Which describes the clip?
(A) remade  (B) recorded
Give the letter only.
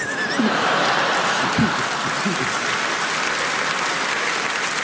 B